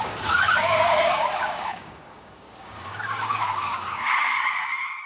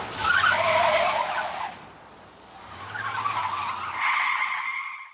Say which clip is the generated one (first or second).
first